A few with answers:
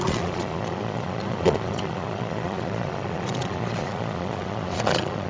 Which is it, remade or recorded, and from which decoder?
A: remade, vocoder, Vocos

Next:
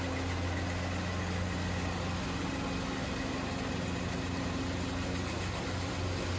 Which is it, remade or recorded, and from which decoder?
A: recorded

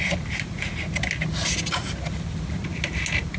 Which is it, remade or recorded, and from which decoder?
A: recorded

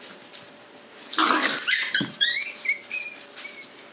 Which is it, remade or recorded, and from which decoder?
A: remade, vocoder, BigVGAN v2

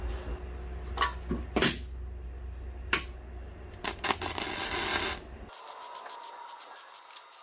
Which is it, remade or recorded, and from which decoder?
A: recorded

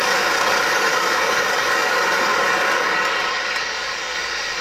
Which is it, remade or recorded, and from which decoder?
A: remade, codec, DAC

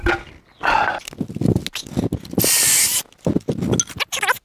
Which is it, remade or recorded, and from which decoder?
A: recorded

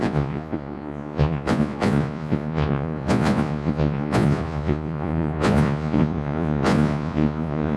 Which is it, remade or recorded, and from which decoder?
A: remade, vocoder, Vocos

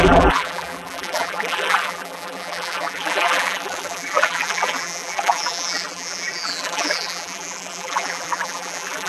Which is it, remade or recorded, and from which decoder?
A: remade, vocoder, BigVGAN v2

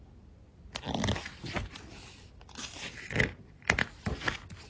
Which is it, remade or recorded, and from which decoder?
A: recorded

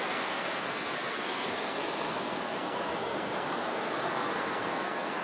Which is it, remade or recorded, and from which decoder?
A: remade, codec, SNAC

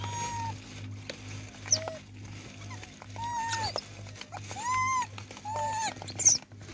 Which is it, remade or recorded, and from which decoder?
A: recorded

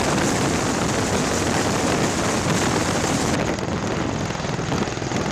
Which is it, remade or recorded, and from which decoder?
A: recorded